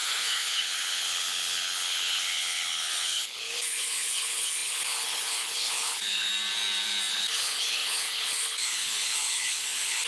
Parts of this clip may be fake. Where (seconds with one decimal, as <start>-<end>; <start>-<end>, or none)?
0.0-6.3; 7.1-10.1